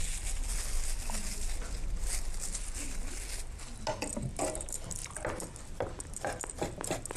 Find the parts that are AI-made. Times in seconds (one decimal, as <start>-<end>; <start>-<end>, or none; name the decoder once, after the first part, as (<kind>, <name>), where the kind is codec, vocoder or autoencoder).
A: none